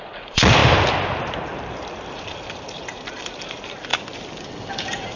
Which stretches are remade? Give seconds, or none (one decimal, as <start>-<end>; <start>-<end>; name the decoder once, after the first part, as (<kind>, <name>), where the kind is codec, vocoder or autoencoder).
0.0-0.6 (vocoder, BigVGAN v2); 1.7-3.9; 4.7-5.2